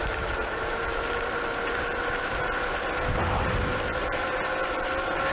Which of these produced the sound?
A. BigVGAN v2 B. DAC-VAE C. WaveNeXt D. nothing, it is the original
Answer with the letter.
D